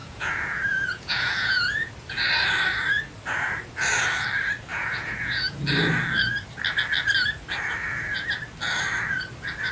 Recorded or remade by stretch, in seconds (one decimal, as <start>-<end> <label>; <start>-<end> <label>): 0.0-1.9 remade; 1.9-4.7 recorded; 4.7-5.4 remade; 5.4-9.7 recorded